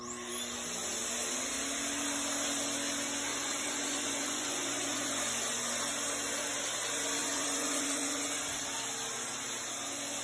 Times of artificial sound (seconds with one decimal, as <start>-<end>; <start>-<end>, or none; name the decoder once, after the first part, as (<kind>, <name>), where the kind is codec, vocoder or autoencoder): 3.3-5.6 (vocoder, Vocos); 7.2-8.6